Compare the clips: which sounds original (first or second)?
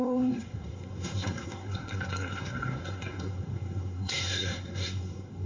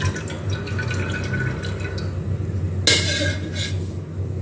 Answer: second